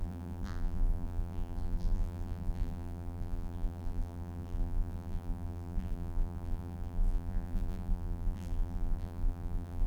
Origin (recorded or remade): remade